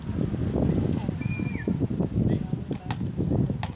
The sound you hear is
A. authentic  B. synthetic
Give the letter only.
A